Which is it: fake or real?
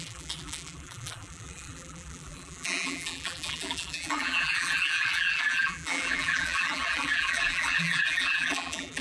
fake